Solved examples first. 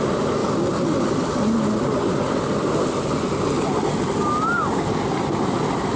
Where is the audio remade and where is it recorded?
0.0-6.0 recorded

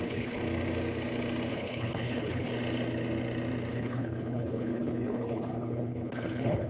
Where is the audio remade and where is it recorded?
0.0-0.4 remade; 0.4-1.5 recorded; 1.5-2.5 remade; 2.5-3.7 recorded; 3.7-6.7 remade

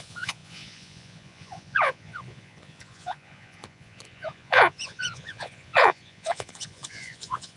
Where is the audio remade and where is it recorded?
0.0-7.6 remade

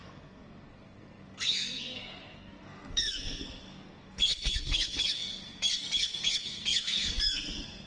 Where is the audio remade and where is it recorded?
0.0-7.9 remade

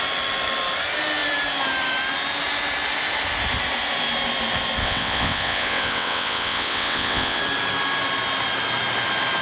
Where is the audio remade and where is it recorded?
0.0-4.8 recorded; 4.8-7.4 remade; 7.4-9.4 recorded

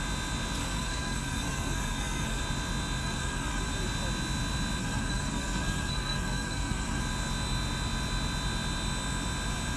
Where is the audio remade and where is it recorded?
0.0-0.6 recorded; 0.6-2.4 remade; 2.4-3.0 recorded; 3.0-3.6 remade; 3.6-4.8 recorded; 4.8-7.0 remade; 7.0-9.8 recorded